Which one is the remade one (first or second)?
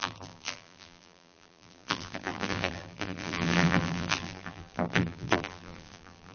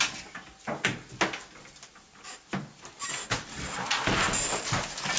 first